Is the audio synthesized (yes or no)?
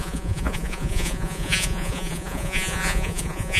yes